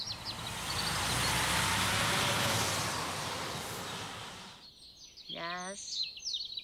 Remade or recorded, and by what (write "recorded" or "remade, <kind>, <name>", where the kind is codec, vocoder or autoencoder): recorded